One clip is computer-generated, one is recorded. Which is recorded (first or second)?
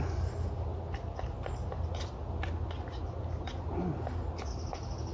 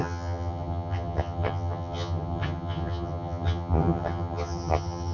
first